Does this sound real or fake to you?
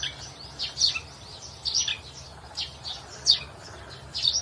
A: real